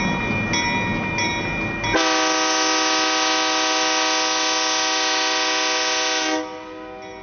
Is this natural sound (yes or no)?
yes